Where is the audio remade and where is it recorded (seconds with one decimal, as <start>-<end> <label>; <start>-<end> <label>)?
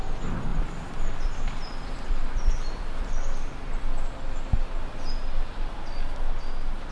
0.0-0.5 recorded; 0.5-3.1 remade; 3.1-6.9 recorded